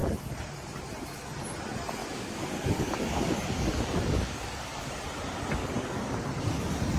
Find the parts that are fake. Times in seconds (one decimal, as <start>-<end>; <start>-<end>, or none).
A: 2.0-4.9; 5.6-6.1